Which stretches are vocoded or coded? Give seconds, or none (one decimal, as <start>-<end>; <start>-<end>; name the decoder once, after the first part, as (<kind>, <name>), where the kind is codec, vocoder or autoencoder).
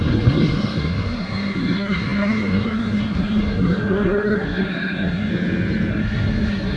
0.0-5.3 (codec, SNAC); 5.9-6.8